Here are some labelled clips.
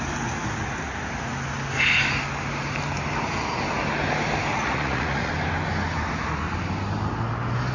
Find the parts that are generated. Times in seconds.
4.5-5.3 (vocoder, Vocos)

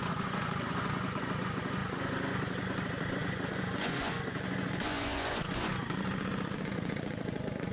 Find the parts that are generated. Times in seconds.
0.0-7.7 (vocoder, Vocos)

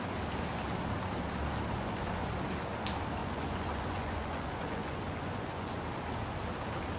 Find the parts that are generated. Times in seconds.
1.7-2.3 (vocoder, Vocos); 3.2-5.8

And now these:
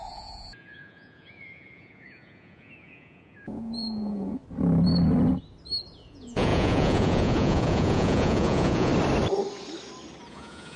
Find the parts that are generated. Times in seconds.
0.0-4.4 (vocoder, Vocos); 6.1-8.9; 10.3-10.8

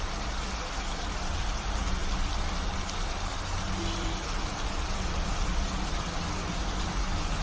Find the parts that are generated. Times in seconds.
none

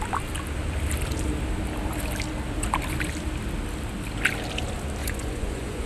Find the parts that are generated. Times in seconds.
5.0-5.9 (vocoder, Vocos)

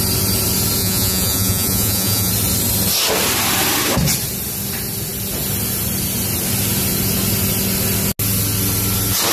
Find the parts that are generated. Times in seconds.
0.8-2.3 (vocoder, Vocos)

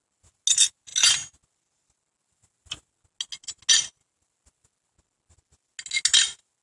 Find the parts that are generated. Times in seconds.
none